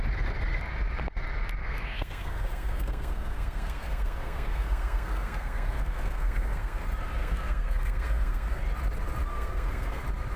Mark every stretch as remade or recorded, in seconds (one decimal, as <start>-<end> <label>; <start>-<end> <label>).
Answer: 0.0-1.6 recorded; 1.6-6.8 remade; 6.8-7.2 recorded; 7.2-8.6 remade; 8.6-9.3 recorded; 9.3-10.0 remade; 10.0-10.4 recorded